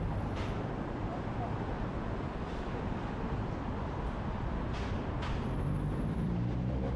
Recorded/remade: remade